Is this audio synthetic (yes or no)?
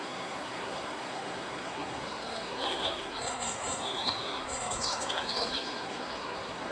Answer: yes